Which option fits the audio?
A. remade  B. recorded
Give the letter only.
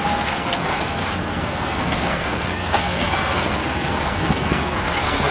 A